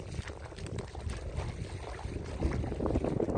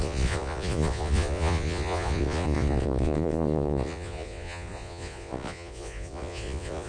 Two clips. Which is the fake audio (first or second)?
second